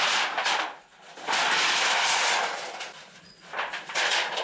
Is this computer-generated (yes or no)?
no